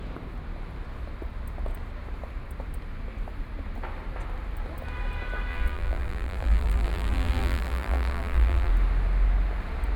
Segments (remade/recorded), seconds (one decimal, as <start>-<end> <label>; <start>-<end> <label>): 0.0-5.5 recorded; 5.5-8.7 remade; 8.7-10.0 recorded